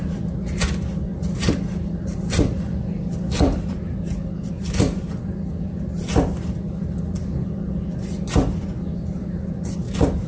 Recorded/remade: recorded